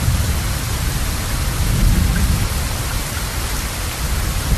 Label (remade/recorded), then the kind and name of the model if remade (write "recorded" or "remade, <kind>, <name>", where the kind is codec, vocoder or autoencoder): recorded